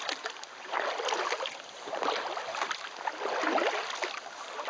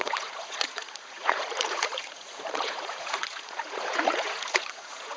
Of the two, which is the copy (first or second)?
second